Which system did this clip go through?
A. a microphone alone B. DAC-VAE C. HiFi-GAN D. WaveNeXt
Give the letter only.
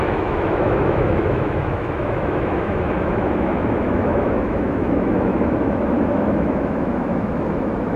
B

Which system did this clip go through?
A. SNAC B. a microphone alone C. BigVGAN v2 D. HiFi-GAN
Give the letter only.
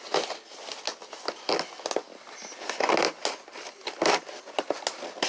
B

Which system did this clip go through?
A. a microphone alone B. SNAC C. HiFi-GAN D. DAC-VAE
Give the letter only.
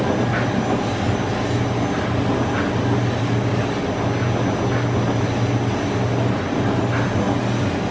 A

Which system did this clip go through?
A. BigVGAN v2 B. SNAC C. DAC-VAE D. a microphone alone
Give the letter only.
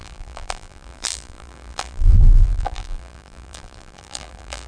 A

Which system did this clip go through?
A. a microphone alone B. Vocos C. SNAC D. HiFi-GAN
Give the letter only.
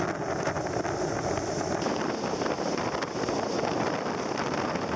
A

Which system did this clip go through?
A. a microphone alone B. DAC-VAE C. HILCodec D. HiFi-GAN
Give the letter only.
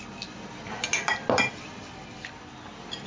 A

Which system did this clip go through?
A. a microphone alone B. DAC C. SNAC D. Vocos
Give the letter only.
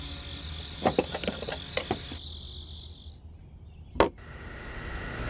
A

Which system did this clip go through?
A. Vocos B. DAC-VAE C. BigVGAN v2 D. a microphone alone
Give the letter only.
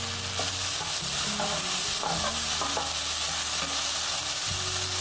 D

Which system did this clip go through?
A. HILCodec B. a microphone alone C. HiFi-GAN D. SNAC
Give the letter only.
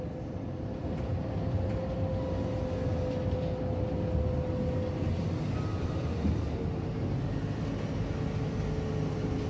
B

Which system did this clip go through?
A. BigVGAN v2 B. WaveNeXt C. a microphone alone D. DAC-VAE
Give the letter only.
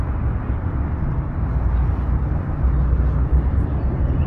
C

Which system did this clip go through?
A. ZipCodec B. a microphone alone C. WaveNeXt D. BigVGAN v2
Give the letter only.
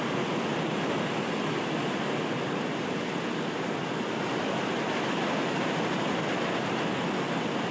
B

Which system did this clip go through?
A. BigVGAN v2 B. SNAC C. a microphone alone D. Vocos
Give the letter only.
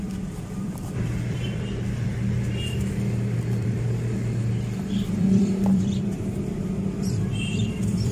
A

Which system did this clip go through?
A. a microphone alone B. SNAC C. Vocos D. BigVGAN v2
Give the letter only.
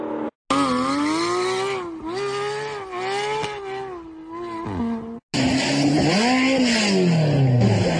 A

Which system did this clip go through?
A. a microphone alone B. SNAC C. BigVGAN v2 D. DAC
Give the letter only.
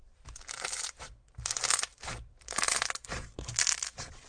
C